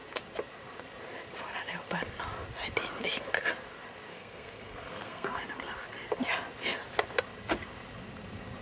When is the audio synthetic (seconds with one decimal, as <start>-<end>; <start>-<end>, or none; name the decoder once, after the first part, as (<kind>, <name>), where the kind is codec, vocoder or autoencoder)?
4.1-5.4 (codec, SNAC)